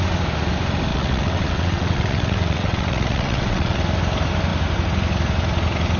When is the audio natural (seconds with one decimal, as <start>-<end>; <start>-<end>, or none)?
0.0-0.9; 3.8-6.0